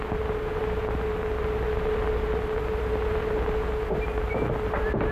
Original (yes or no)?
yes